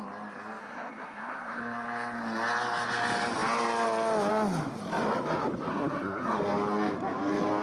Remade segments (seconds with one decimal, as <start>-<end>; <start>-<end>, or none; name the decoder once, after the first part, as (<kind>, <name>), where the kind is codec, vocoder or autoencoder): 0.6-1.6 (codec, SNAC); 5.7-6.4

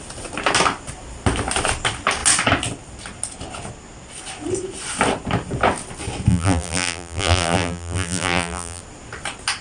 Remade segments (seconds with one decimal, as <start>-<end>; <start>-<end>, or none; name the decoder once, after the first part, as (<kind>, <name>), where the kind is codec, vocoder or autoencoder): 6.3-8.8 (vocoder, BigVGAN v2)

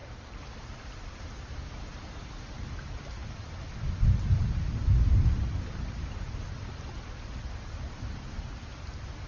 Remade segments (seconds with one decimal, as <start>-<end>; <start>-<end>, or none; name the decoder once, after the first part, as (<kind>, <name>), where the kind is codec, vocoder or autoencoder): none

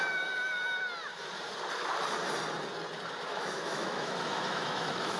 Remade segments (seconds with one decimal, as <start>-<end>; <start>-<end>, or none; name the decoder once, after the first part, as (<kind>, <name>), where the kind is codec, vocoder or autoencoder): 3.3-5.2 (autoencoder, DAC-VAE)